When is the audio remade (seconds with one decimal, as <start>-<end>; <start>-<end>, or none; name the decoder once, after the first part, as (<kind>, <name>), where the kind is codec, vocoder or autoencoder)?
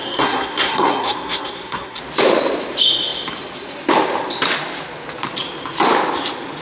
0.0-2.0 (codec, SNAC)